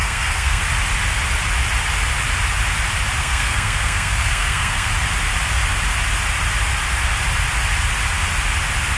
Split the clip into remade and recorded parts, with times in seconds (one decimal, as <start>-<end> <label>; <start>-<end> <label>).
0.0-0.6 remade; 0.6-3.2 recorded; 3.2-4.9 remade; 4.9-9.0 recorded